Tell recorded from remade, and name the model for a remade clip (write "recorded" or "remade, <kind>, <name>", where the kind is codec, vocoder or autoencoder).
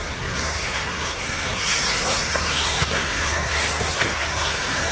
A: remade, codec, SNAC